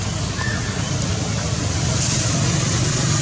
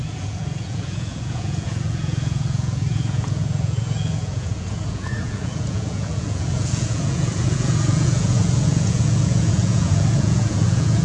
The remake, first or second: second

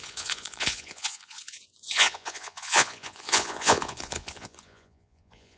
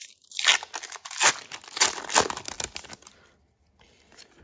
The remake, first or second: first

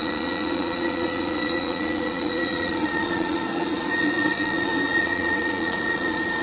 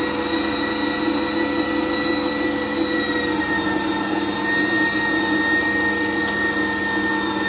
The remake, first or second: first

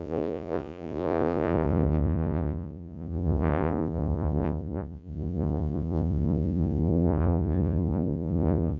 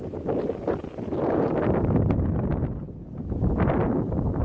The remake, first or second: first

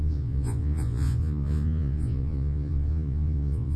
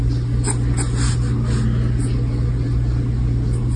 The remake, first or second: first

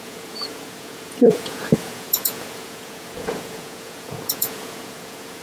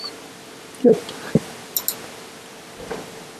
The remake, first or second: first